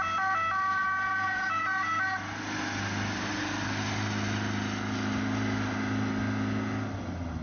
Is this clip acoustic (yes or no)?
yes